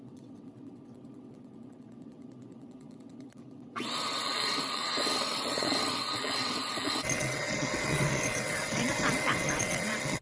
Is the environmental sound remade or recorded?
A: remade